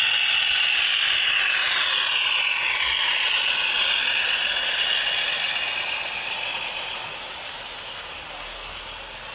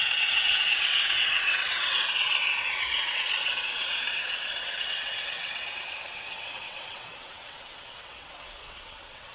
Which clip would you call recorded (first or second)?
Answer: first